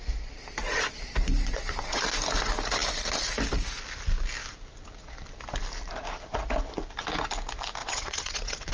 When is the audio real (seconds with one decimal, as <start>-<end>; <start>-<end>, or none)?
0.0-1.2; 2.0-7.8